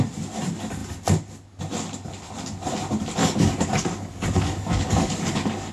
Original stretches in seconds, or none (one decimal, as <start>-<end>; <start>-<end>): 0.0-3.2